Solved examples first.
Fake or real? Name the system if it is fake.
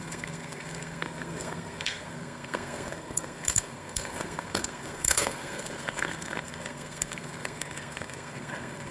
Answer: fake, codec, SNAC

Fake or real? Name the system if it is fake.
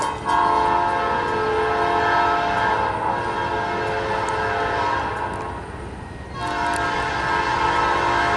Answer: real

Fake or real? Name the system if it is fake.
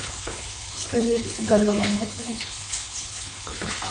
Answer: fake, codec, HILCodec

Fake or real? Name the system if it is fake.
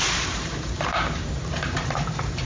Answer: fake, vocoder, BigVGAN v2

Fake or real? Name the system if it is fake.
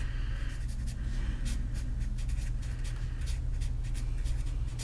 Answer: real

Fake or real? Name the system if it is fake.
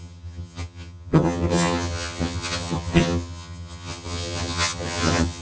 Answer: fake, vocoder, HiFi-GAN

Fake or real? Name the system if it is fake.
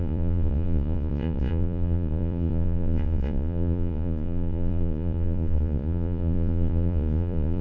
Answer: fake, vocoder, Vocos